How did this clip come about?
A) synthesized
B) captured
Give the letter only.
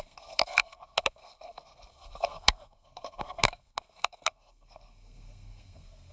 A